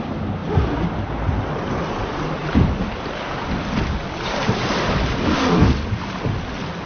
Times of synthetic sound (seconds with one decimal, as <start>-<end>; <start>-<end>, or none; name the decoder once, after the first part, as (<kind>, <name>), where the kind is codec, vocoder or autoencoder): none